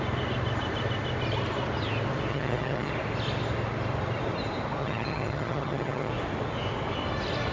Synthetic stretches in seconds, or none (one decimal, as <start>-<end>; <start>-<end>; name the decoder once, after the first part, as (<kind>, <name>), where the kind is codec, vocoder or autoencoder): 2.3-2.9 (vocoder, HiFi-GAN); 4.8-6.1